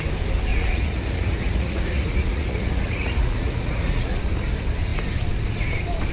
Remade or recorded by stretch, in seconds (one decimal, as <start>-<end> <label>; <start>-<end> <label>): 0.0-0.5 recorded; 0.5-4.2 remade; 4.2-6.1 recorded

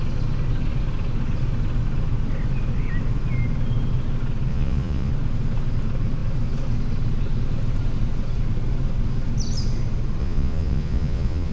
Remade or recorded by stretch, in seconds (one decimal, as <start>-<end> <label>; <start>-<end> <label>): 0.0-4.5 recorded; 4.5-5.1 remade; 5.1-10.2 recorded; 10.2-11.5 remade

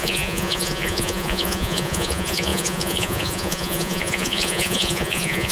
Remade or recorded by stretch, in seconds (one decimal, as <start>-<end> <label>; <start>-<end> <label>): 0.0-5.5 remade

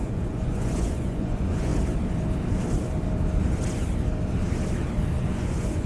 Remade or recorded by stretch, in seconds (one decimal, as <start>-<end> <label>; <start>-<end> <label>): 0.0-1.7 remade; 1.7-5.2 recorded; 5.2-5.9 remade

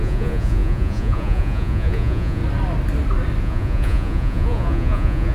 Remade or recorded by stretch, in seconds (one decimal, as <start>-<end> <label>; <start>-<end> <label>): 0.0-2.4 remade; 2.4-3.4 recorded; 3.4-5.3 remade

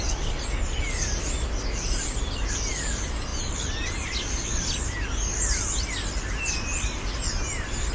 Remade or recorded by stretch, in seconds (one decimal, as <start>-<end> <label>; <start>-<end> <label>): 0.0-7.9 recorded

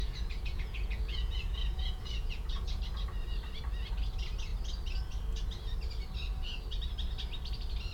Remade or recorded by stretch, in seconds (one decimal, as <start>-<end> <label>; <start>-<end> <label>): 0.0-2.8 remade; 2.8-7.9 recorded